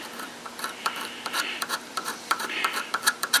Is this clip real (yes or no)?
no